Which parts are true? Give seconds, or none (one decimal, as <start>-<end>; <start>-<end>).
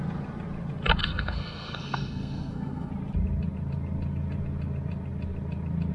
0.0-1.0; 2.9-5.9